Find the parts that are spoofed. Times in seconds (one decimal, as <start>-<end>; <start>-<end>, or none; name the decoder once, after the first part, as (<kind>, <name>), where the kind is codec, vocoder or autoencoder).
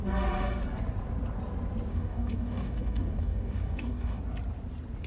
1.9-4.2 (codec, DAC)